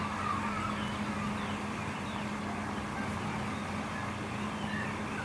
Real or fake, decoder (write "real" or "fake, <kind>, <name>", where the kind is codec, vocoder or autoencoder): real